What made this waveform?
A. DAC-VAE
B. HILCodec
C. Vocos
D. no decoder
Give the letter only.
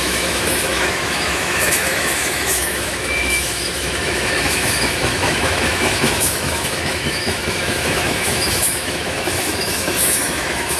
A